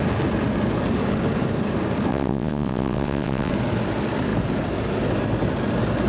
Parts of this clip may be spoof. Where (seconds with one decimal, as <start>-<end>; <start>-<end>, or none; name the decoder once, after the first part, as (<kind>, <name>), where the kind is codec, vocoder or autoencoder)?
2.1-3.5 (vocoder, WaveNeXt)